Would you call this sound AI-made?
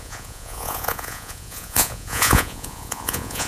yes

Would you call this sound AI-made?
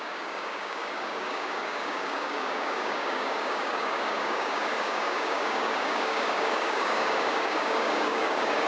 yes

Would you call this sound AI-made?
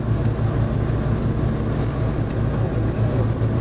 no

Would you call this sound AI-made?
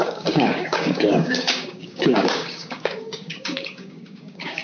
yes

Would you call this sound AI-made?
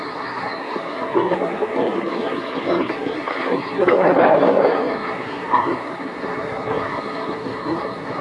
yes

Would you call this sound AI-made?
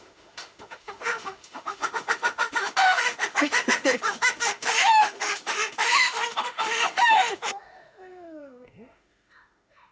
yes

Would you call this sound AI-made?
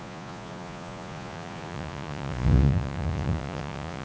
yes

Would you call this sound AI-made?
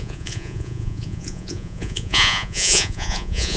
yes